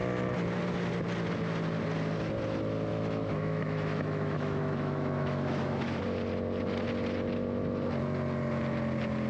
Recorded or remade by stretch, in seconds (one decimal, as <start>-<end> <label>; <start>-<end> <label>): 0.0-2.9 recorded; 2.9-6.0 remade; 6.0-9.3 recorded